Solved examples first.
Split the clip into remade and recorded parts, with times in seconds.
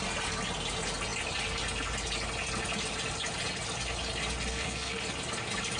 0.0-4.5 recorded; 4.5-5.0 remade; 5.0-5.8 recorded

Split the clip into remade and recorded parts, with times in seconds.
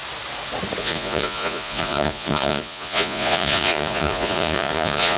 0.0-0.8 recorded; 0.8-5.2 remade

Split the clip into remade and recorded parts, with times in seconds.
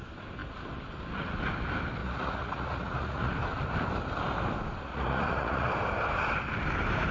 0.0-2.0 recorded; 2.0-3.3 remade; 3.3-4.9 recorded; 4.9-5.7 remade; 5.7-7.1 recorded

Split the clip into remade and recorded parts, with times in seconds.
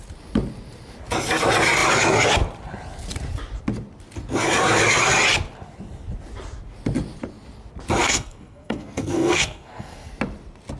0.0-8.0 recorded; 8.0-10.1 remade; 10.1-10.8 recorded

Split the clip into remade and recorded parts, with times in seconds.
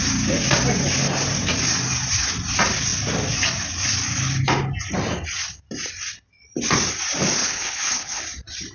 0.0-7.4 recorded; 7.4-8.2 remade; 8.2-8.7 recorded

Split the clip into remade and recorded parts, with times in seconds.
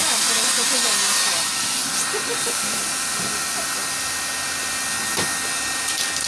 0.0-6.3 recorded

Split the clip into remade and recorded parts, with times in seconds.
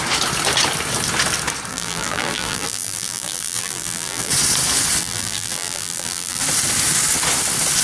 0.0-1.7 recorded; 1.7-4.3 remade; 4.3-5.0 recorded; 5.0-6.4 remade; 6.4-7.8 recorded